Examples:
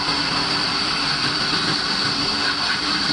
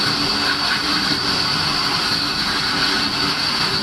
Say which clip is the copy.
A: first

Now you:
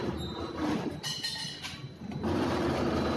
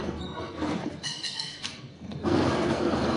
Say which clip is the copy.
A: second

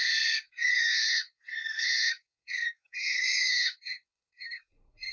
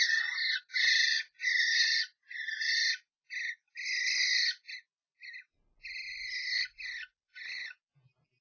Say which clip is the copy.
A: first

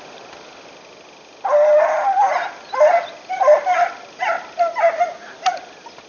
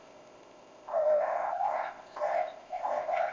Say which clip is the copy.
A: second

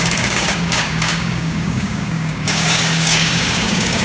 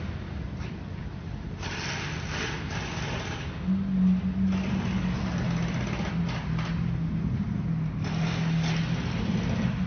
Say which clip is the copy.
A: first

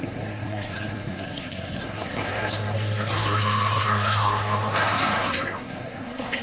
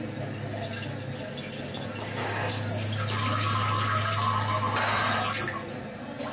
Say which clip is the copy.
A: first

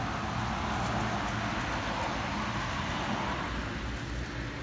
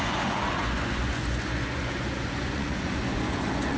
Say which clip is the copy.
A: second